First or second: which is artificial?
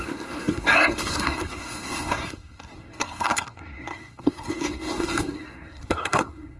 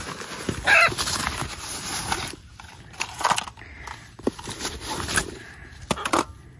first